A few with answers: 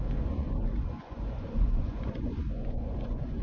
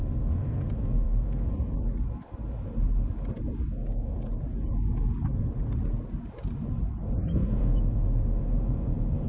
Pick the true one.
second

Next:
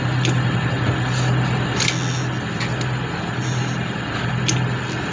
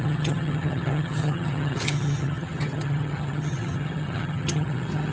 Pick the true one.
first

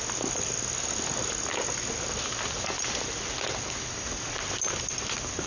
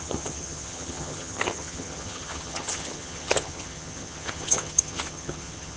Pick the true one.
first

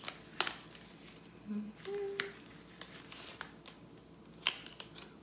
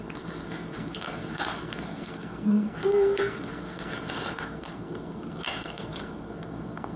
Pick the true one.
first